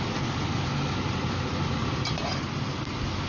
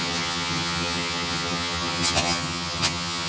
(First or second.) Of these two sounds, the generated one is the second